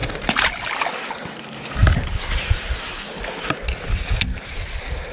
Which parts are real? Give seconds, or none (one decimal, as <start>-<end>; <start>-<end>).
0.7-5.1